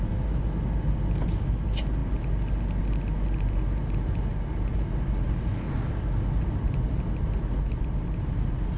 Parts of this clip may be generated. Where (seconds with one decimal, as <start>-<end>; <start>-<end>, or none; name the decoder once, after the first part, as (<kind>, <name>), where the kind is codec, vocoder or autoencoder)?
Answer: none

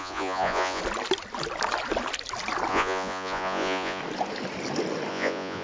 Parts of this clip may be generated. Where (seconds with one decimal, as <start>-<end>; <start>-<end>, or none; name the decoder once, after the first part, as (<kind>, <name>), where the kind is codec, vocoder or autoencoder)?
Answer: 0.0-0.8 (vocoder, Vocos); 2.7-4.0; 5.1-5.6

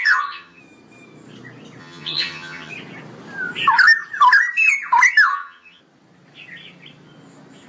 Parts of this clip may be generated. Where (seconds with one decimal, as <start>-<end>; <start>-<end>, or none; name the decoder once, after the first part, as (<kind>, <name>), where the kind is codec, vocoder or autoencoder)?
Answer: 0.0-0.6 (vocoder, HiFi-GAN); 1.8-2.7; 5.3-5.8